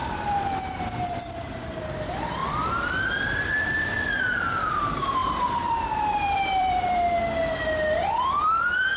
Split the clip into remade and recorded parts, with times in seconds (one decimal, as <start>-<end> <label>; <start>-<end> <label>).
0.0-2.4 remade; 2.4-4.2 recorded; 4.2-7.2 remade; 7.2-8.4 recorded; 8.4-9.0 remade